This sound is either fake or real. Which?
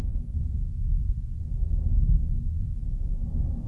real